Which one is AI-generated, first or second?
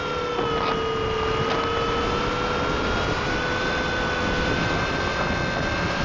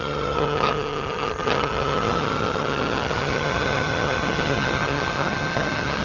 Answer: second